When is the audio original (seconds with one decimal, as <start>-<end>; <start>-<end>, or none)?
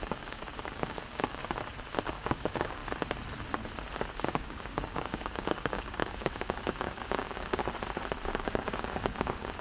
1.4-2.1; 2.8-4.2; 7.6-8.3